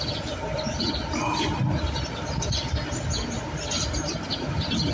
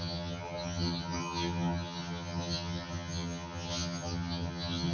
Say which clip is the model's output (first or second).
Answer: second